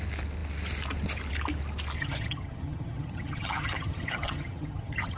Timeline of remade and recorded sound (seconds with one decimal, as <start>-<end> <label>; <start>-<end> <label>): 0.0-2.0 recorded; 2.0-5.2 remade